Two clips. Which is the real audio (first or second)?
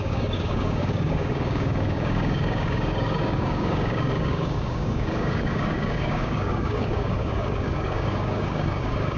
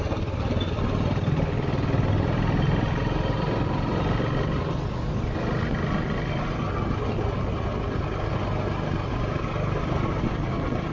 second